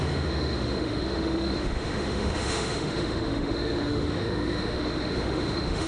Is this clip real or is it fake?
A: fake